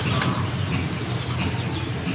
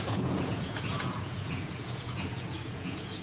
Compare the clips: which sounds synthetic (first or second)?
second